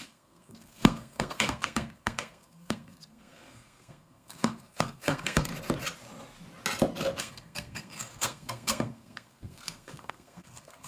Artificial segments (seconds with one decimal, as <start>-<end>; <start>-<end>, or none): 0.0-5.5; 7.2-10.9